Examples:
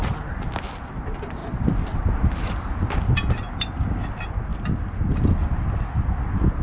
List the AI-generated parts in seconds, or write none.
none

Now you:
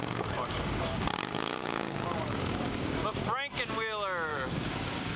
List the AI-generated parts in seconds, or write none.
0.0-3.1 (codec, DAC); 4.3-5.2

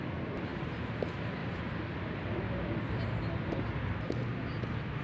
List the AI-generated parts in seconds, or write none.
none